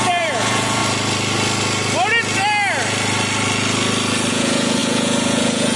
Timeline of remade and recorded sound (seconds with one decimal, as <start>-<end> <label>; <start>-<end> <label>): 0.0-0.8 remade; 0.8-4.3 recorded; 4.3-5.8 remade